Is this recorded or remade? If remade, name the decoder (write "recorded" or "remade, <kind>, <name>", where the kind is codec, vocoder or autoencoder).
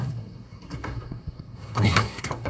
remade, codec, SNAC